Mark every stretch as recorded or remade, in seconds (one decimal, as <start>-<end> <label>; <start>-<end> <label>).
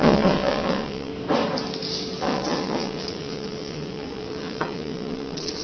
0.0-1.1 remade; 1.1-2.2 recorded; 2.2-5.6 remade